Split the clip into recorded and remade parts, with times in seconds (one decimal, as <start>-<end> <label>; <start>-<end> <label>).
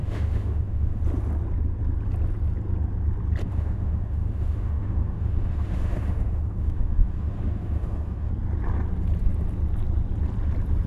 0.0-1.0 remade; 1.0-3.4 recorded; 3.4-8.3 remade; 8.3-10.9 recorded